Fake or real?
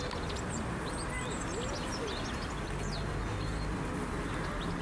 real